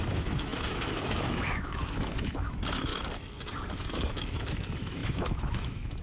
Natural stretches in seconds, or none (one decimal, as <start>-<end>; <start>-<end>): 2.9-3.7